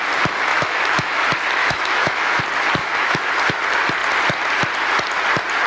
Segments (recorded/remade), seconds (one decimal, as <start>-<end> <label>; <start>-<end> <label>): 0.0-0.5 recorded; 0.5-1.2 remade; 1.2-1.6 recorded; 1.6-2.4 remade; 2.4-2.8 recorded; 2.8-3.3 remade; 3.3-5.7 recorded